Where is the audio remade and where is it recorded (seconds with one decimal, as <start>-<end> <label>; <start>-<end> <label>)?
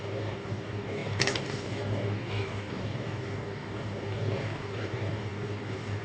0.0-6.0 remade